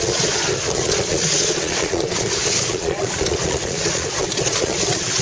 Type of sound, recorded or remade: remade